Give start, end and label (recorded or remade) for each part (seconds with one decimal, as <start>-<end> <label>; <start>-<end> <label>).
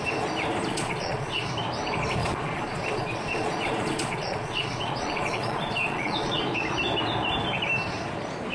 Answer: 0.0-0.7 recorded; 0.7-1.5 remade; 1.5-2.2 recorded; 2.2-6.4 remade; 6.4-8.5 recorded